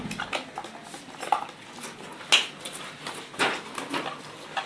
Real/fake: real